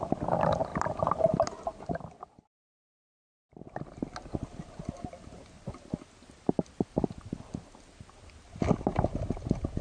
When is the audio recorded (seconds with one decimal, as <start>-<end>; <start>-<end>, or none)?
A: 0.0-9.8